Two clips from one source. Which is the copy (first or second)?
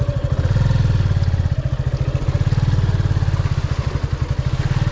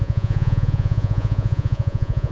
second